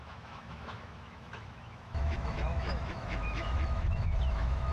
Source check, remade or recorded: remade